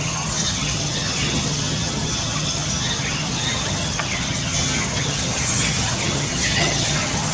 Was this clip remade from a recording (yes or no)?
yes